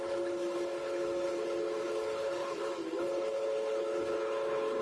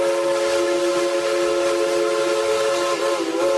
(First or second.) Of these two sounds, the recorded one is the second